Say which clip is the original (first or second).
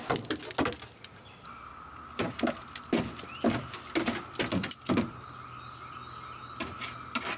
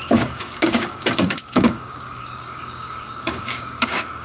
first